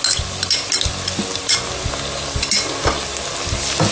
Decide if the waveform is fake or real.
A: real